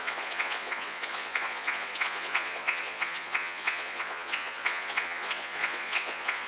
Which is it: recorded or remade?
remade